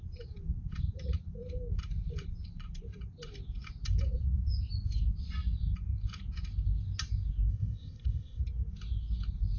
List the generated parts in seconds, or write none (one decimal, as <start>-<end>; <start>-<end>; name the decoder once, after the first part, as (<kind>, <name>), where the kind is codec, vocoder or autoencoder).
7.5-8.4 (codec, ZipCodec)